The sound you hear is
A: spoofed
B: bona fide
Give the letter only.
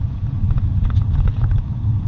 A